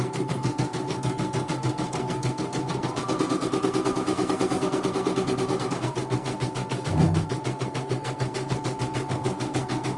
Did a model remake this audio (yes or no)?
yes